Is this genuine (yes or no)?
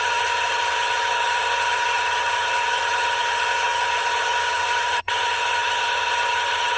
no